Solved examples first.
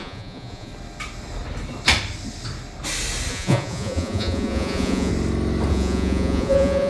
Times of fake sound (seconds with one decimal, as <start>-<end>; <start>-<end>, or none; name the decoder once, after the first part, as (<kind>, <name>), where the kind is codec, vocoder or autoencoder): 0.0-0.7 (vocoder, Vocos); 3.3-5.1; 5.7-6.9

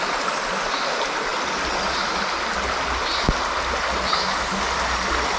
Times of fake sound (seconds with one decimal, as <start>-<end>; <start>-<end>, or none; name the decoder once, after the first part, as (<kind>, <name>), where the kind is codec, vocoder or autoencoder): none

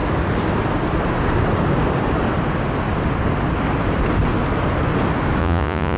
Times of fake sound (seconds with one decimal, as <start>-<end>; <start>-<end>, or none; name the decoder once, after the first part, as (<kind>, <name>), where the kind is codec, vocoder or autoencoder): 5.4-6.0 (vocoder, Vocos)

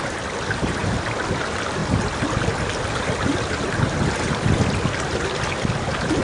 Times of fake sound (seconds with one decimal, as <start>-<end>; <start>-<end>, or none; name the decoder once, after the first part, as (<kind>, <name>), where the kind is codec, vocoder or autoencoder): none

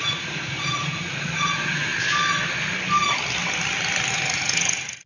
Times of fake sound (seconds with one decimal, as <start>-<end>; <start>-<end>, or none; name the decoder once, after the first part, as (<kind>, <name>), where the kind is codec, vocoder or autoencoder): 0.0-1.9 (vocoder, Vocos); 4.1-5.1

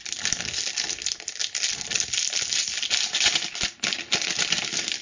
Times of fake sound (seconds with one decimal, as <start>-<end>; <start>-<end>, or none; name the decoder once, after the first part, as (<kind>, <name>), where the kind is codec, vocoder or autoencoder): none

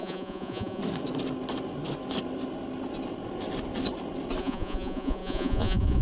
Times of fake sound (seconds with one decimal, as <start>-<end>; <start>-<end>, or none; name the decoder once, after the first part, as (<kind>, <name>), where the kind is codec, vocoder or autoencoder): 0.0-0.8 (vocoder, Vocos); 4.4-6.0